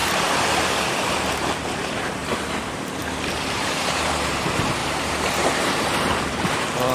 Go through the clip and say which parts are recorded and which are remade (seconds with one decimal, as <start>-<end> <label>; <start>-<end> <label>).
0.0-2.2 remade; 2.2-3.3 recorded; 3.3-6.9 remade